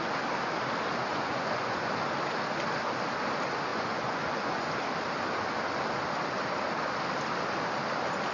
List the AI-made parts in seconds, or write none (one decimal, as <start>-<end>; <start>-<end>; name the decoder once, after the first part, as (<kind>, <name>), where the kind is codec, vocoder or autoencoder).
1.1-1.9 (vocoder, Vocos); 3.7-4.7